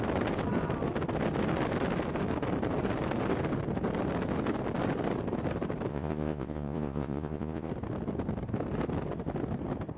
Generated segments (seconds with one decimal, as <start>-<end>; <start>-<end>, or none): 5.9-7.7